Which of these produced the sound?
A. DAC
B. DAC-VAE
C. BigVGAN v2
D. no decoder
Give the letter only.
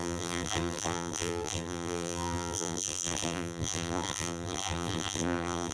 C